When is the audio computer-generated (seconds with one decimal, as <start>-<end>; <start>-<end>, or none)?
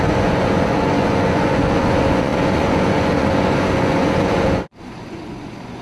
0.0-5.8